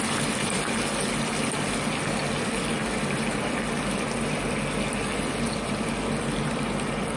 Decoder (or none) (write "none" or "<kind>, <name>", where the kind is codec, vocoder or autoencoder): vocoder, BigVGAN v2